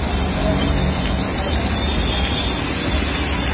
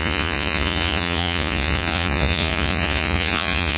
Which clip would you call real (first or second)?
first